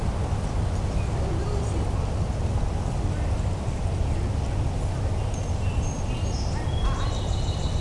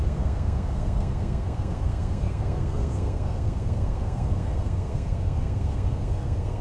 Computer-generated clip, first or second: second